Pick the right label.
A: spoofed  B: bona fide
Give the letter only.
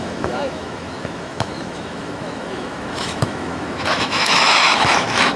A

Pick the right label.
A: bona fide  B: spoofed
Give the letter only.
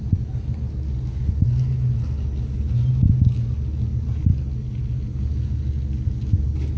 A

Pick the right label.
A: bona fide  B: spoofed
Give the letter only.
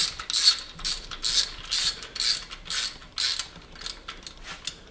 A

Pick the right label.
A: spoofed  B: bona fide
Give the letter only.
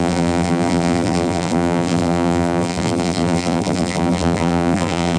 A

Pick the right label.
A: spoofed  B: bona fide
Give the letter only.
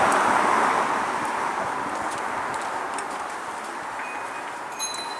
B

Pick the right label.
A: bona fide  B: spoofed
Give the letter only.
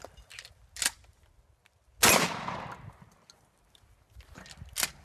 A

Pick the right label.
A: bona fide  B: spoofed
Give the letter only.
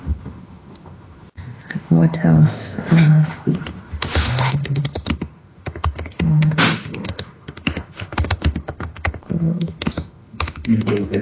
B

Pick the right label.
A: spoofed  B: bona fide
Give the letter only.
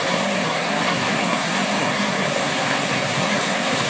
A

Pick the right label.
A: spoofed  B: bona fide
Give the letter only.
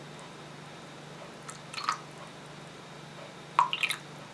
B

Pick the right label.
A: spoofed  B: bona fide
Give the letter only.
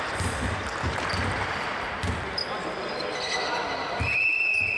B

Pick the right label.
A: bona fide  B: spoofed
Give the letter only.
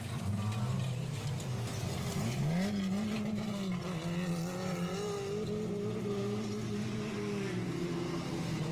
A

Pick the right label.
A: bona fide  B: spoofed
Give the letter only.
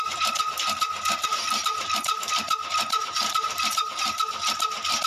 A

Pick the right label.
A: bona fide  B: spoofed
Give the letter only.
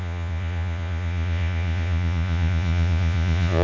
B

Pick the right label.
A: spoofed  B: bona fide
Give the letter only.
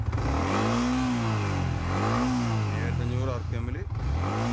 B